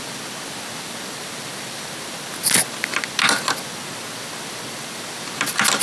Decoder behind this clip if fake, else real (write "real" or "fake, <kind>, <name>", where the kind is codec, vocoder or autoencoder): real